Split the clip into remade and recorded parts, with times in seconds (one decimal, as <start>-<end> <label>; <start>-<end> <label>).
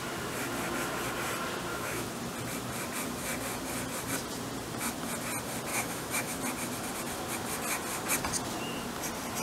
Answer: 0.0-1.7 recorded; 1.7-2.2 remade; 2.2-5.7 recorded; 5.7-6.4 remade; 6.4-9.4 recorded